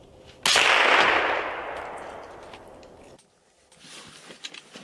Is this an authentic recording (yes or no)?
yes